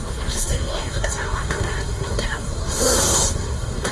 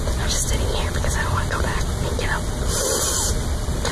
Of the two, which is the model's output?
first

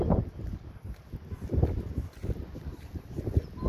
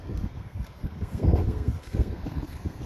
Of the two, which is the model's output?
second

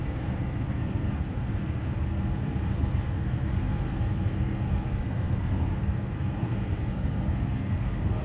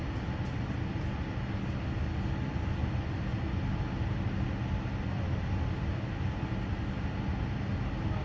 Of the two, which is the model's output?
first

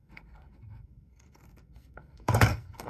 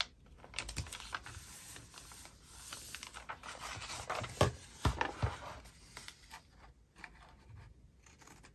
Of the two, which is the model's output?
first